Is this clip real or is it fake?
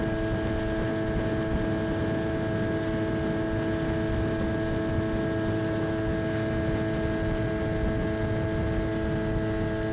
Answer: real